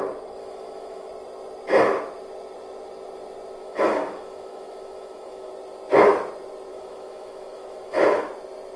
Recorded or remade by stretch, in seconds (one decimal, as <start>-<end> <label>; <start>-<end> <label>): 0.0-0.4 recorded; 0.4-1.1 remade; 1.1-3.6 recorded; 3.6-5.5 remade; 5.5-6.7 recorded; 6.7-8.2 remade; 8.2-8.8 recorded